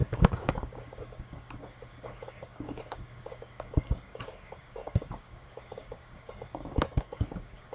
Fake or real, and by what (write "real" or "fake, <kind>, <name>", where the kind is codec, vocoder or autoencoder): fake, codec, DAC